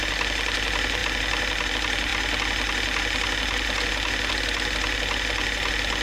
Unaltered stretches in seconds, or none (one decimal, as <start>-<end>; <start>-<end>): 0.0-6.0